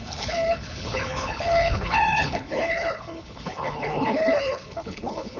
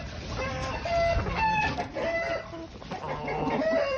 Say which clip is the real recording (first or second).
second